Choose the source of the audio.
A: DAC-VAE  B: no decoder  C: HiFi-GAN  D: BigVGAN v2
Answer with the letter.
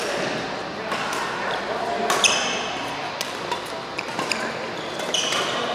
B